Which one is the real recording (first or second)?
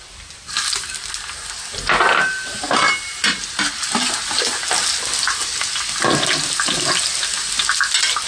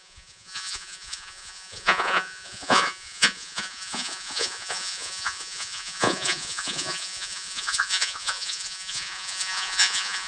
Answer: first